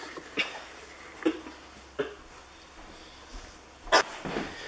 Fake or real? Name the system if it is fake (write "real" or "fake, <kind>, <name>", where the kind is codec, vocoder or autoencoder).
real